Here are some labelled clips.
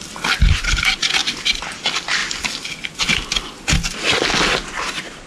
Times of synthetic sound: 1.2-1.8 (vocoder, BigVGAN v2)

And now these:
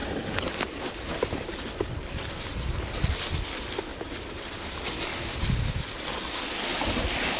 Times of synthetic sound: 0.0-0.9 (vocoder, BigVGAN v2); 3.9-4.6

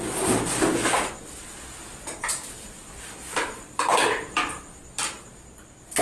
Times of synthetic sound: 1.9-4.8 (vocoder, BigVGAN v2)

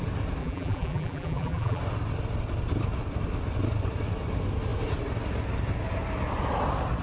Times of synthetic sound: 0.4-1.8 (vocoder, BigVGAN v2)

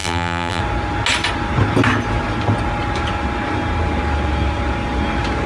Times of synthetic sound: 0.0-0.6 (vocoder, BigVGAN v2)

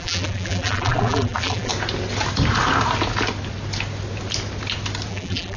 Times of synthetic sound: 0.0-1.7 (vocoder, BigVGAN v2); 5.1-5.6

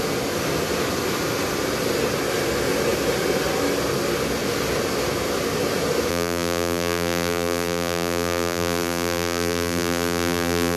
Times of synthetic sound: 6.1-10.8 (vocoder, BigVGAN v2)

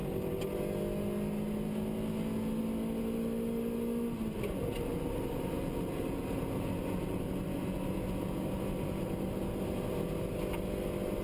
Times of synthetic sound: 4.9-7.4 (vocoder, BigVGAN v2)